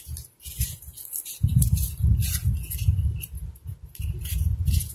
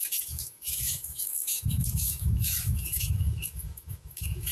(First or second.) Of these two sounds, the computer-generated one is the second